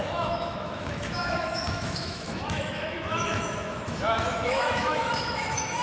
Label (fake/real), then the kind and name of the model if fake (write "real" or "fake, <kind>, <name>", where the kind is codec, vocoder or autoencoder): fake, autoencoder, DAC-VAE